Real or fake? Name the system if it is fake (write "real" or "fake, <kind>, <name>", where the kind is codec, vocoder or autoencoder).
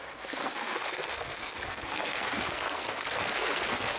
fake, codec, SNAC